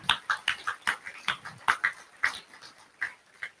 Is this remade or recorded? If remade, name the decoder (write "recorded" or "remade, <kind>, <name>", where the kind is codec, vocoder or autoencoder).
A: recorded